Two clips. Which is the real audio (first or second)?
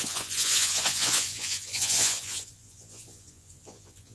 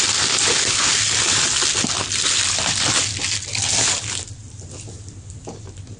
second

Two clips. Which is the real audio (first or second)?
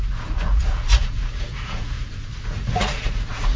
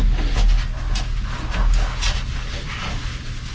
second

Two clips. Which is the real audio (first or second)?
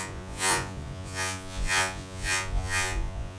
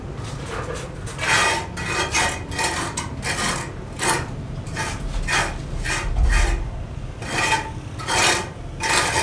second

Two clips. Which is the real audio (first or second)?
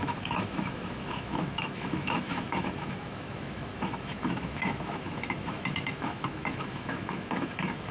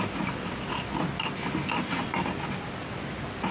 second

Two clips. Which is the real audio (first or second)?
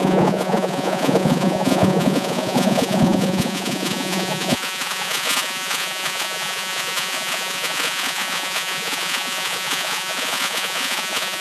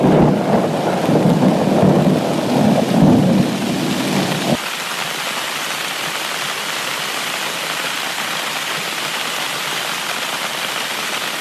second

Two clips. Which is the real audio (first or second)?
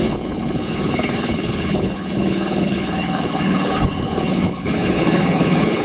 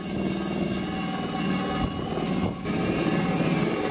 second